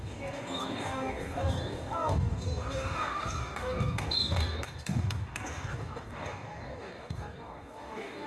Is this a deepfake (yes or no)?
yes